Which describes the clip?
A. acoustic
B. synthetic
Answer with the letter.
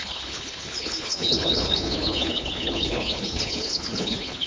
B